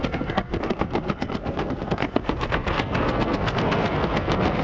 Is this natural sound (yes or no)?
no